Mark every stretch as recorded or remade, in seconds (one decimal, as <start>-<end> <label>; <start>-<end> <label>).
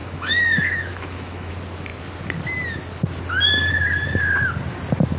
0.0-1.5 remade; 1.5-5.2 recorded